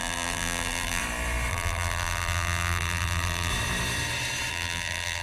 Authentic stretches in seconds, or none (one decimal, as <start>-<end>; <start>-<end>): 1.0-1.5; 3.5-4.5